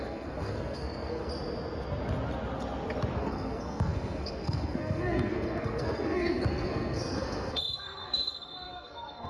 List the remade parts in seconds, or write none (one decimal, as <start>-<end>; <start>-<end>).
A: 0.0-1.3; 3.2-9.3